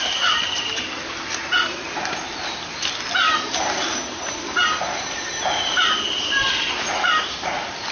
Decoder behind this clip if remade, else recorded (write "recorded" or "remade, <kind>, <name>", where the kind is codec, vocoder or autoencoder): recorded